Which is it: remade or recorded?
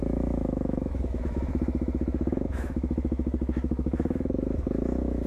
remade